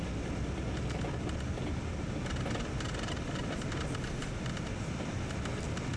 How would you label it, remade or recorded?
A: recorded